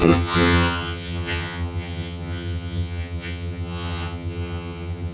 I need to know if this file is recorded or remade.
remade